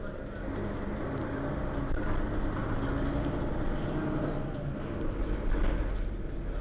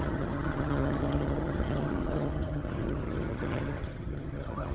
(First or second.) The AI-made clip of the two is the second